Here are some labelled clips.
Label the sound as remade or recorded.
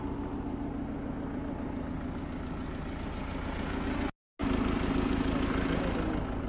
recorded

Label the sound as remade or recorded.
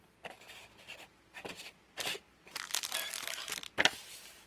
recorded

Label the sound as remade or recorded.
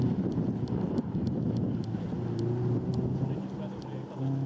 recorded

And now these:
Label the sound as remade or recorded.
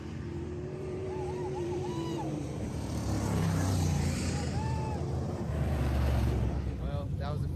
remade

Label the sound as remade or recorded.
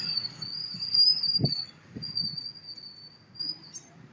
recorded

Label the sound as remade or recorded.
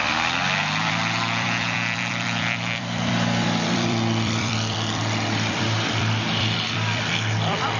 remade